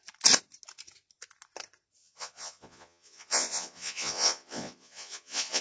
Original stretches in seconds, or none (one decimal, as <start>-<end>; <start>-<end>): 0.0-2.0